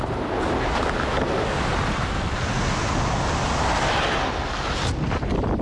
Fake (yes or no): no